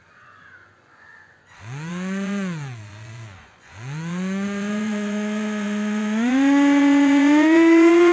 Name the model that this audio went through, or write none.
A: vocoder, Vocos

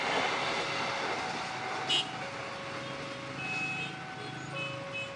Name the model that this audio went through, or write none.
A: none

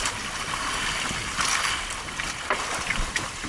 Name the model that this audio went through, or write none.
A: none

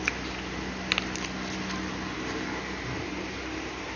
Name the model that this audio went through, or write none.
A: none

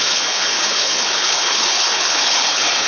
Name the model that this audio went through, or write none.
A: codec, HILCodec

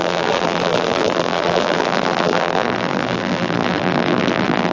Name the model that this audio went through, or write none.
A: vocoder, BigVGAN v2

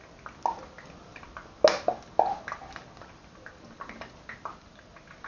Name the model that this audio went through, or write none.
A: none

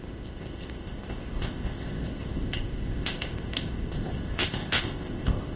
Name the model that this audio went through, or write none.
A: codec, ZipCodec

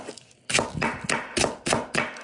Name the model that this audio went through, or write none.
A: none